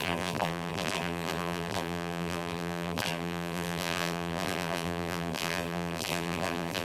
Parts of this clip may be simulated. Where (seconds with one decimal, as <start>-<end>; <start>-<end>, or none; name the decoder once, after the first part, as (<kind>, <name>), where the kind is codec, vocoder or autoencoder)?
0.0-6.8 (vocoder, BigVGAN v2)